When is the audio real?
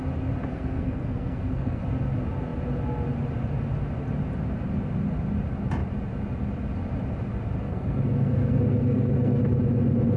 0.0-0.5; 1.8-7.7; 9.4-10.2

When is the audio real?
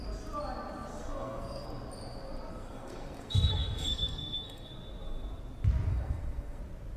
0.0-0.9; 1.7-2.5; 4.7-5.9; 6.6-7.0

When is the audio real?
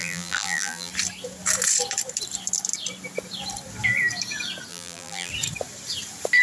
0.9-4.7; 5.3-6.4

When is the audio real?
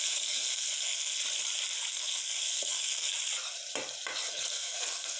1.2-1.9; 3.1-4.3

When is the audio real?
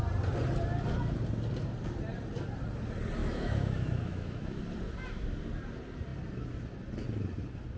0.0-3.2; 4.6-7.8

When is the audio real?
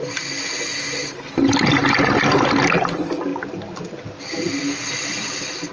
0.0-5.7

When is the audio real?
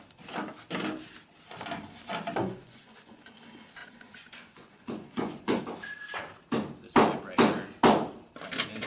0.0-2.4; 3.3-3.8; 5.6-8.9